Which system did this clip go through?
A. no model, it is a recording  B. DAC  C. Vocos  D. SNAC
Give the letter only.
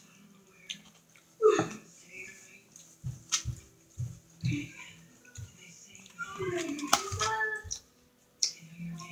A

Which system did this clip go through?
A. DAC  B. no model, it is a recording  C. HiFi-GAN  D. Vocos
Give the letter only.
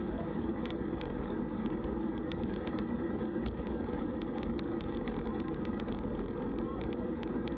A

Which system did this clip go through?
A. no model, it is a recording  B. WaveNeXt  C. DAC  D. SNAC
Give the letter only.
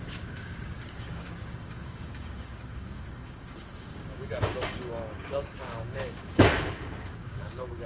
C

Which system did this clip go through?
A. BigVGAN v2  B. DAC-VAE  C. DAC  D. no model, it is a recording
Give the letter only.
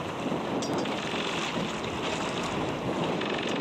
D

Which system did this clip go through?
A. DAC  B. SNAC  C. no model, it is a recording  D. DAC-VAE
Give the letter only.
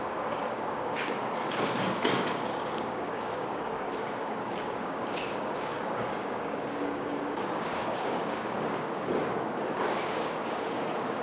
A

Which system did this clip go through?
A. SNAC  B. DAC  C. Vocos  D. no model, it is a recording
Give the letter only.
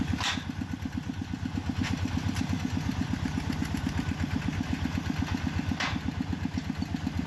D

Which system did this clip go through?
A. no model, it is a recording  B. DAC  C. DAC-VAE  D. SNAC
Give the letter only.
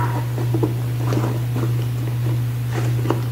A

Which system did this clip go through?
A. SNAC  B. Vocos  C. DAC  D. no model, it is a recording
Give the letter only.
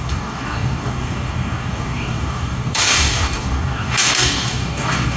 C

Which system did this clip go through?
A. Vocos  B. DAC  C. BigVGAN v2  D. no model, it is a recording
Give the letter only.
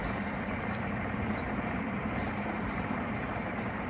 D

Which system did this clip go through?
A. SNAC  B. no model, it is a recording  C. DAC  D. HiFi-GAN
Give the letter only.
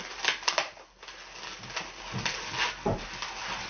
B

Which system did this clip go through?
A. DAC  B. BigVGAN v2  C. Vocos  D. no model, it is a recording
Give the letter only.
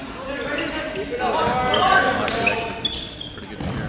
D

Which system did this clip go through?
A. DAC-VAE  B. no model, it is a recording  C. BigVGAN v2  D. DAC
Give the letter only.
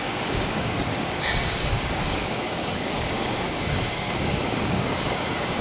D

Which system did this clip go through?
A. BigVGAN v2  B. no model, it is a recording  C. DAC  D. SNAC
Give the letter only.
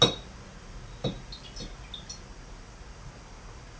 B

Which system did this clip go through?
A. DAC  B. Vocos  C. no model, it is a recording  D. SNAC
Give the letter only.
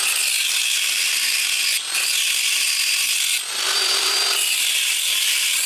C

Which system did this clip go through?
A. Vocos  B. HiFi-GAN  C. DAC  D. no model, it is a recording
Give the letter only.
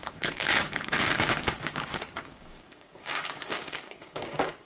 C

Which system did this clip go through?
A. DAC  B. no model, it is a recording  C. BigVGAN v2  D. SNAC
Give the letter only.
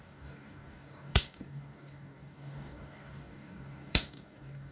A